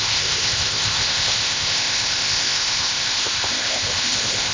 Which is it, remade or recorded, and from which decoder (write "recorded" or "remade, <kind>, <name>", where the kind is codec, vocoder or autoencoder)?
remade, codec, ZipCodec